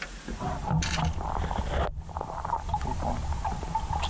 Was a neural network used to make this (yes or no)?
no